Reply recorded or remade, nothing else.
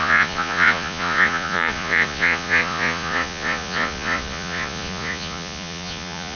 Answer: remade